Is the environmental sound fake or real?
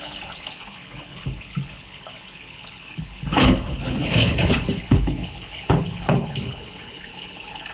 fake